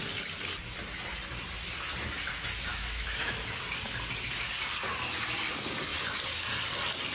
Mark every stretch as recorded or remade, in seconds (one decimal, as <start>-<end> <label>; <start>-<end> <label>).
0.0-2.7 recorded; 2.7-3.6 remade; 3.6-7.1 recorded